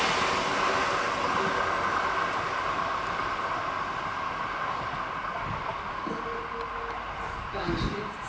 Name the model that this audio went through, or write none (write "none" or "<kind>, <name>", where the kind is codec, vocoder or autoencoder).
none